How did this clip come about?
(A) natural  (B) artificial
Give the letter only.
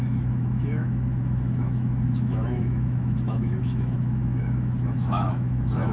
B